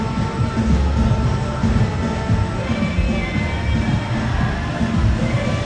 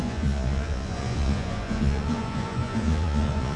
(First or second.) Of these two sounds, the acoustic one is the first